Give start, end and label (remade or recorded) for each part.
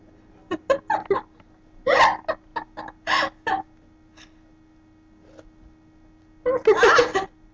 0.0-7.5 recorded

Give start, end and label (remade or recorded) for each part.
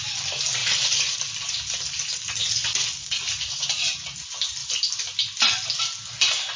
0.0-6.6 recorded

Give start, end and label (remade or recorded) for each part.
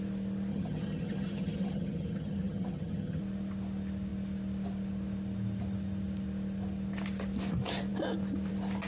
0.0-0.5 recorded; 0.5-3.2 remade; 3.2-8.9 recorded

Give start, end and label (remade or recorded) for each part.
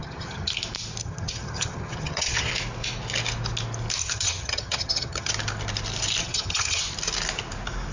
0.0-0.5 remade; 0.5-1.0 recorded; 1.0-2.5 remade; 2.5-4.0 recorded; 4.0-5.3 remade; 5.3-6.2 recorded; 6.2-6.8 remade; 6.8-7.9 recorded